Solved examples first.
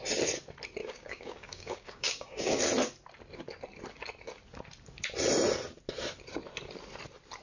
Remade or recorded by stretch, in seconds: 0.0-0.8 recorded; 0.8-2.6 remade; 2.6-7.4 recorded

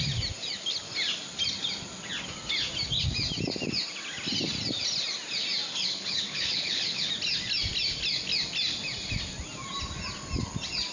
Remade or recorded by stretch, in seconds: 0.0-5.7 recorded; 5.7-7.1 remade; 7.1-10.9 recorded

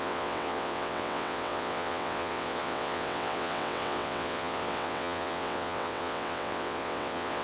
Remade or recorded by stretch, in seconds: 0.0-7.4 remade